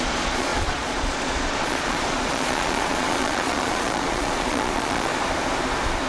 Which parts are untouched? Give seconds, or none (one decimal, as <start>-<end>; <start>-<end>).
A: 5.1-6.1